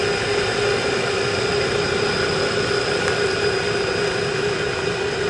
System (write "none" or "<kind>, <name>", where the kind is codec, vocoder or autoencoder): none